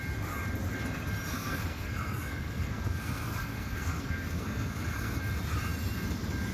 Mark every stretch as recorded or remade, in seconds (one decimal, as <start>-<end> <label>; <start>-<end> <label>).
0.0-1.3 recorded; 1.3-5.2 remade; 5.2-6.5 recorded